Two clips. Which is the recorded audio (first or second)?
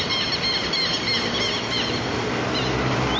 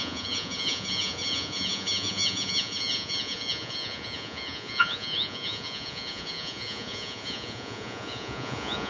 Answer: first